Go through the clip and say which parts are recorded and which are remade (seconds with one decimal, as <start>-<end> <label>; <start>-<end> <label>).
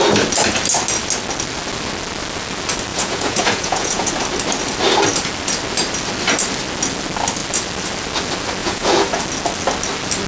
0.0-2.9 recorded; 2.9-4.1 remade; 4.1-8.6 recorded; 8.6-9.2 remade; 9.2-10.3 recorded